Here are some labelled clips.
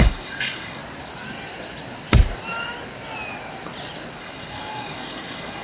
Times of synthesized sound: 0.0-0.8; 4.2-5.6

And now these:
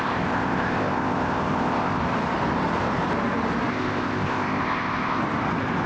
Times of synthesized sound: 0.0-2.0; 3.7-5.2

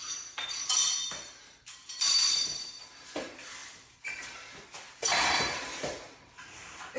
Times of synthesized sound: 0.0-7.0